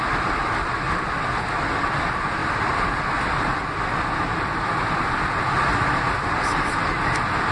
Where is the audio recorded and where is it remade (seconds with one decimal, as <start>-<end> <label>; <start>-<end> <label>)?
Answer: 0.0-7.5 recorded